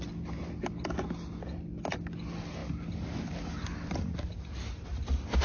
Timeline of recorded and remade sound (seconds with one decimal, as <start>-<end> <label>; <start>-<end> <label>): 0.0-5.4 recorded